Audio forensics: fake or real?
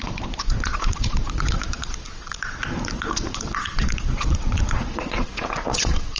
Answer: fake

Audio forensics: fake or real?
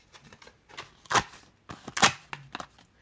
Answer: real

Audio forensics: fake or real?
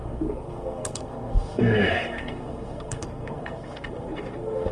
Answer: fake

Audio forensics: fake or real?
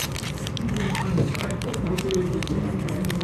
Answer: real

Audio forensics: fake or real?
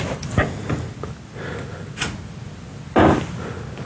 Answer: real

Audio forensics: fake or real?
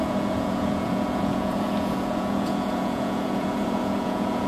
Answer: fake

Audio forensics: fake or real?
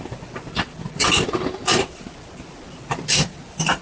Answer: real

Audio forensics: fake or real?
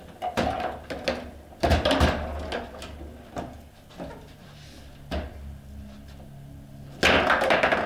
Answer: real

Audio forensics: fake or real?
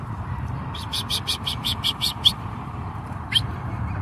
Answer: fake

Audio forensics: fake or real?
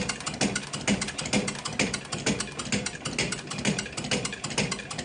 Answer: real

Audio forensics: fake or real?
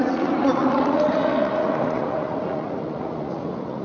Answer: fake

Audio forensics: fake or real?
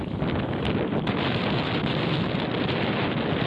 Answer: real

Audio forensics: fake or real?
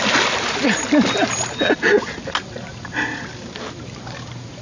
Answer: real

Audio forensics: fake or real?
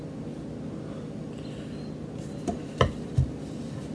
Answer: real